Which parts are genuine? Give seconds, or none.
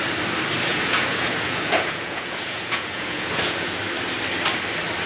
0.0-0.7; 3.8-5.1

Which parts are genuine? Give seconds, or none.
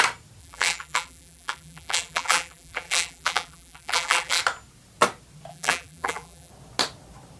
0.0-0.4; 4.4-5.5; 6.5-7.4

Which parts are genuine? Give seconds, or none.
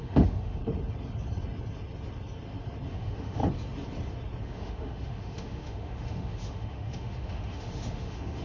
0.6-2.9; 3.4-4.4